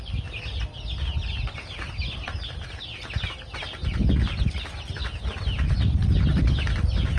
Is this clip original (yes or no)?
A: yes